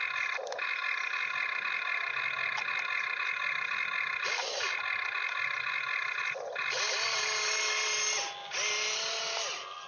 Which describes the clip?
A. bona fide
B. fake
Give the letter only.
A